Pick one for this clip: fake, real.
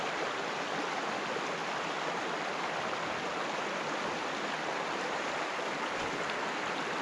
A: real